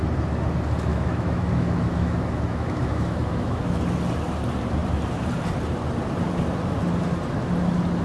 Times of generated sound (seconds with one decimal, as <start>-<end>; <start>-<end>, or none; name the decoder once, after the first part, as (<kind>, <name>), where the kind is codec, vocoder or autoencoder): 0.9-3.8 (autoencoder, DAC-VAE)